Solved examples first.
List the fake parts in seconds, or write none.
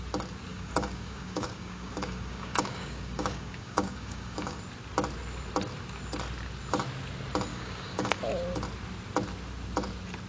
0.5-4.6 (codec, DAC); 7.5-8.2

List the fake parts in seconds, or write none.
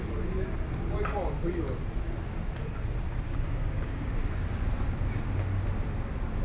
3.3-4.1 (codec, DAC)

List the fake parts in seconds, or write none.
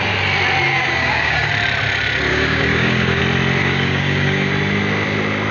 0.7-1.5 (codec, DAC); 2.3-3.2; 3.6-4.5